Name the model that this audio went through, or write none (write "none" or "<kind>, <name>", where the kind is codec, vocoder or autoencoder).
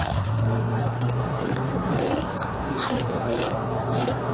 codec, SNAC